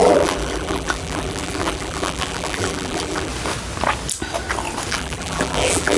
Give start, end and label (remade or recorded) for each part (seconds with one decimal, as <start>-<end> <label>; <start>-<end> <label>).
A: 0.0-3.3 remade; 3.3-4.9 recorded; 4.9-6.0 remade